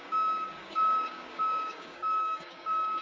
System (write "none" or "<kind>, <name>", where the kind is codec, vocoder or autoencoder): codec, DAC